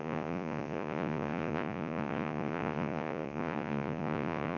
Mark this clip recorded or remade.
remade